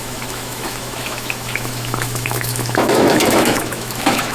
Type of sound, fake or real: fake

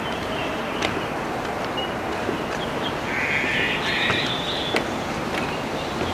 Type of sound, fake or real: real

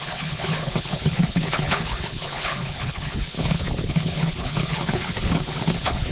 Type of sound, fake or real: fake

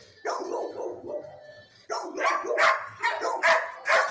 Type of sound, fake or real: real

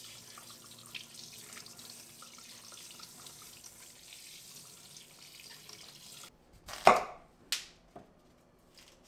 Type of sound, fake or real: real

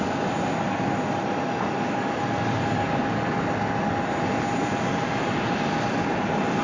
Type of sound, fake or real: real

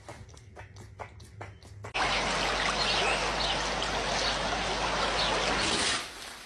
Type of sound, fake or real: real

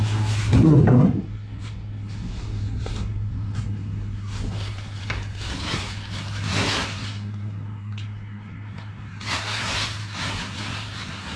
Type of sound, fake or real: fake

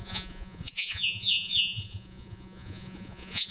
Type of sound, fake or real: fake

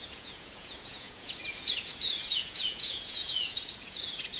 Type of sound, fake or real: fake